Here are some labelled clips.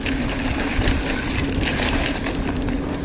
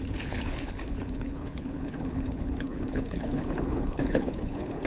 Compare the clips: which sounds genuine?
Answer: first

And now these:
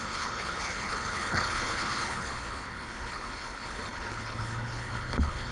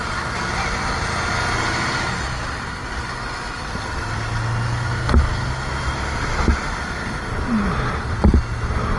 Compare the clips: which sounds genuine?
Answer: second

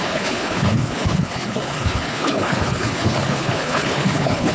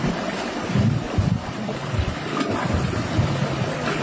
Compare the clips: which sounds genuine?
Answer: second